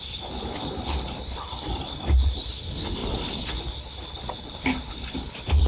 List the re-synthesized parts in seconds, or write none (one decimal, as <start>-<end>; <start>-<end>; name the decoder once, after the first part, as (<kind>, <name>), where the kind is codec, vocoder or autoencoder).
0.0-5.7 (codec, HILCodec)